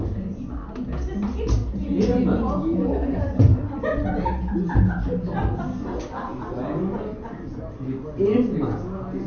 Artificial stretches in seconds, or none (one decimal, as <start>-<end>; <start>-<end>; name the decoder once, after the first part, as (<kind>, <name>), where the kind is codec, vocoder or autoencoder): none